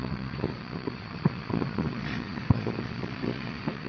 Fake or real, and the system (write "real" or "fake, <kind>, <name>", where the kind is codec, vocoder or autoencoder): fake, vocoder, Vocos